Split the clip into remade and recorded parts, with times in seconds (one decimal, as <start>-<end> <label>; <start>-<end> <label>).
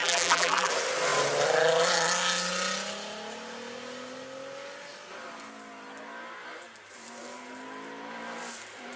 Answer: 0.0-0.7 remade; 0.7-9.0 recorded